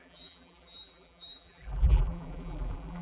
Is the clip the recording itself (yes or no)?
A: no